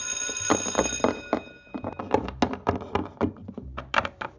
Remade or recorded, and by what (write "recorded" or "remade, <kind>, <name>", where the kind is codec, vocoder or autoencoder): recorded